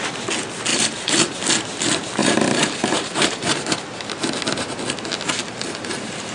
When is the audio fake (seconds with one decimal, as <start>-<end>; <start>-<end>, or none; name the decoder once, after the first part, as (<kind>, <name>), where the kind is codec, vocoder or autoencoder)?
0.7-1.4 (vocoder, BigVGAN v2); 2.2-3.5; 5.4-6.3